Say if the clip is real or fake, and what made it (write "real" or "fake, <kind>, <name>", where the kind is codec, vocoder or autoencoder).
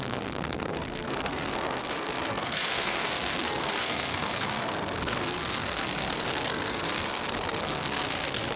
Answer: fake, codec, SNAC